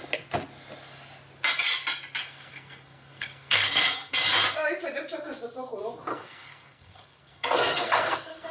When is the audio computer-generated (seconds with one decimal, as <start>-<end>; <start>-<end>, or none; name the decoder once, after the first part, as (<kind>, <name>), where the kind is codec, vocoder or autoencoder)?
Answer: 2.2-4.1 (codec, SNAC); 6.1-8.5